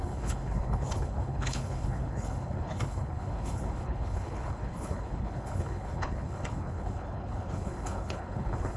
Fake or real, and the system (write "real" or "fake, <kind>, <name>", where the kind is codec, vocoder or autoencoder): fake, codec, HILCodec